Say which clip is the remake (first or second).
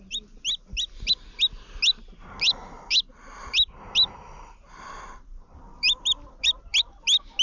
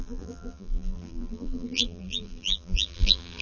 second